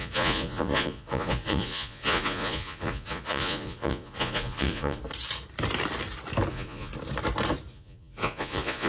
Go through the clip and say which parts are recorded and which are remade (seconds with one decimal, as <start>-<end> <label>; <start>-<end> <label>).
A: 0.0-5.0 remade; 5.0-6.5 recorded; 6.5-6.9 remade; 6.9-7.7 recorded; 7.7-8.9 remade